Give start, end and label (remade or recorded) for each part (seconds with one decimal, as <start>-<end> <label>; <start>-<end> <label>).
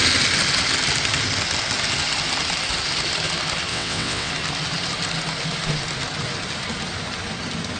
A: 0.0-3.7 recorded; 3.7-4.3 remade; 4.3-7.8 recorded